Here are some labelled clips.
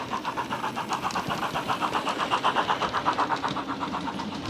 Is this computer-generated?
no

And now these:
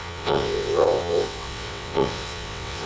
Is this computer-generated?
yes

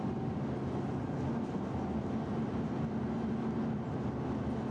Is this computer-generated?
no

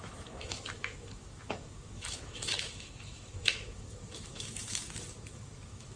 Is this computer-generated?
yes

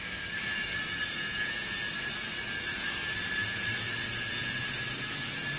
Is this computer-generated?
no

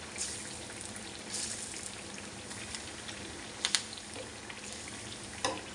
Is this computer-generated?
no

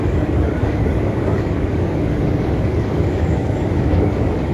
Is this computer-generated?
yes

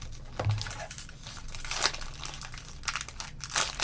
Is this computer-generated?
no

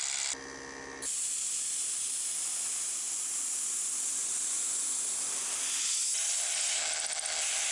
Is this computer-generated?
no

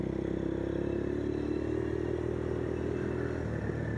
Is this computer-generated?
no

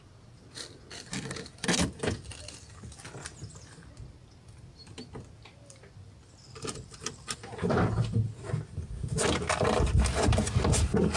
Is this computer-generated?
no